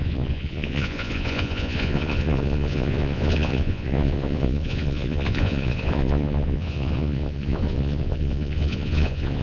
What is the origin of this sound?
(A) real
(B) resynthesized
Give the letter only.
B